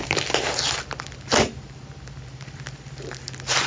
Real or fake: real